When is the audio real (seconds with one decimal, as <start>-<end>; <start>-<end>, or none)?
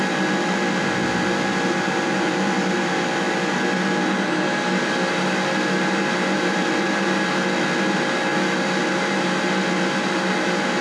0.0-10.8